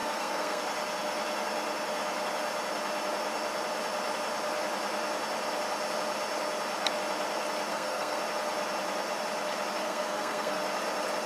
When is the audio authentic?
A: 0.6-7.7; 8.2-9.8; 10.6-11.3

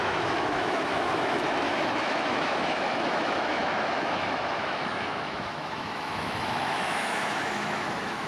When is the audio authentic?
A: none

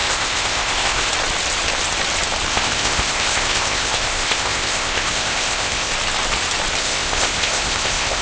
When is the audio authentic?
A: 1.1-2.5; 5.9-6.8